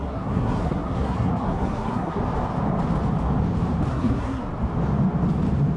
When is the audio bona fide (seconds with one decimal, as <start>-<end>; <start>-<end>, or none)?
2.2-3.9; 4.5-5.8

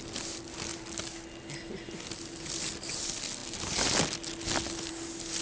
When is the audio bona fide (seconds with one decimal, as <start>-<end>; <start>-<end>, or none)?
0.0-5.4

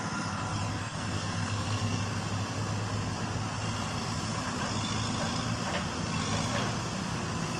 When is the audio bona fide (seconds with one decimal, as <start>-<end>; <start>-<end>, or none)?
0.0-0.8; 2.0-7.6

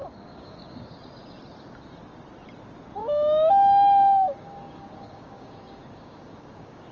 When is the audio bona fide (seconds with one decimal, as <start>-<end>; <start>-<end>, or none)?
1.0-3.0

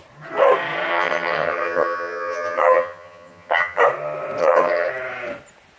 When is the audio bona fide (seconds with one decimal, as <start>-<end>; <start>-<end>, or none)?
0.0-0.9; 3.8-4.4; 4.9-5.8